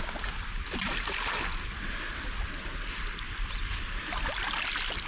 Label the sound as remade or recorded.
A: recorded